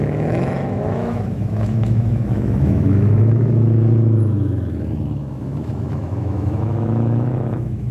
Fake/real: fake